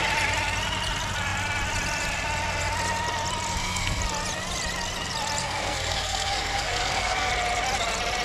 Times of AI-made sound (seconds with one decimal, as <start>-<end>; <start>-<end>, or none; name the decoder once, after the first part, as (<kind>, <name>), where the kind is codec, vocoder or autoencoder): 3.5-4.0 (codec, SNAC); 5.4-7.3